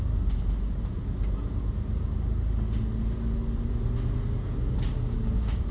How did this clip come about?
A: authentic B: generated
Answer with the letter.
A